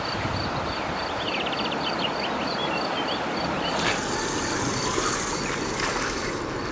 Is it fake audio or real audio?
real